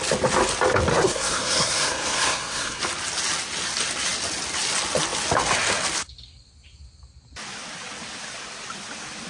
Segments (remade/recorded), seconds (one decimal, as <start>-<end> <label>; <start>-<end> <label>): 0.0-0.9 recorded; 0.9-2.8 remade; 2.8-9.3 recorded